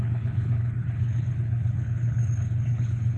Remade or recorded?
remade